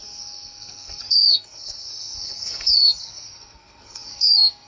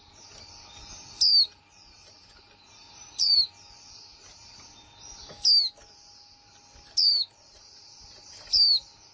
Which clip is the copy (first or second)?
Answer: first